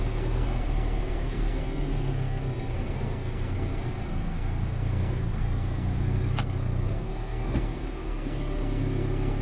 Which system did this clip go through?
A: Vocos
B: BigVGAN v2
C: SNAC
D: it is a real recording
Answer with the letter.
C